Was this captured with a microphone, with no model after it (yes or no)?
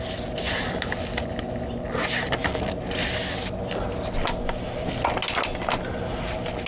yes